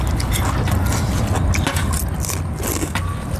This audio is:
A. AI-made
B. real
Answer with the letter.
B